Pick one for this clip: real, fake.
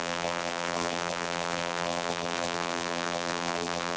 fake